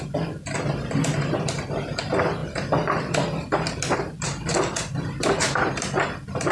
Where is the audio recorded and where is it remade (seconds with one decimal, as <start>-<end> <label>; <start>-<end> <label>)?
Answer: 0.0-6.5 recorded

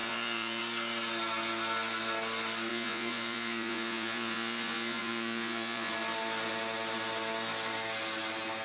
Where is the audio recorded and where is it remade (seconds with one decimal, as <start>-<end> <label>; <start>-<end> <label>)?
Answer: 0.0-0.6 remade; 0.6-2.7 recorded; 2.7-5.9 remade; 5.9-8.6 recorded

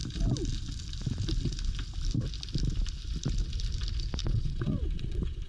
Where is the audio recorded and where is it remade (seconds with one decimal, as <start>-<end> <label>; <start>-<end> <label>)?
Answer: 0.0-4.2 recorded; 4.2-5.5 remade

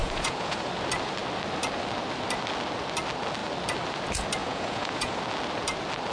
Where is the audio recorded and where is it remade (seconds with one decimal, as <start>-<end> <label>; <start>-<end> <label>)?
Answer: 0.0-0.7 remade; 0.7-4.4 recorded; 4.4-5.2 remade; 5.2-6.1 recorded

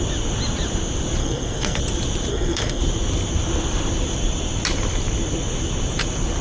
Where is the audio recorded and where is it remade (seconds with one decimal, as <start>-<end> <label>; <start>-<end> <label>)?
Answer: 0.0-1.2 recorded; 1.2-1.8 remade; 1.8-2.3 recorded; 2.3-2.8 remade; 2.8-6.4 recorded